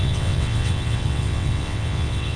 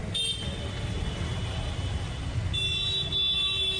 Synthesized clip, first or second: first